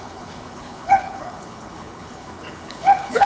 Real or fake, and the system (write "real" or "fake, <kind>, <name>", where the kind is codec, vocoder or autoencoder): fake, codec, HILCodec